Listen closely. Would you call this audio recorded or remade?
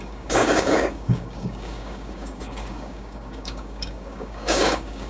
remade